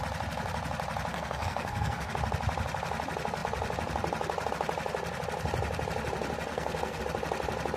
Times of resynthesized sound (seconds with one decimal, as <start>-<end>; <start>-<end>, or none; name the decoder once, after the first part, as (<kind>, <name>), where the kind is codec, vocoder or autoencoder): 1.1-2.1 (codec, SNAC); 6.5-7.0